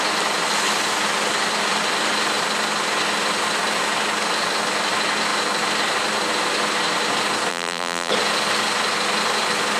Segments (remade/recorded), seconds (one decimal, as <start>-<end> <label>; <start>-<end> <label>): 0.0-7.5 recorded; 7.5-8.1 remade; 8.1-9.8 recorded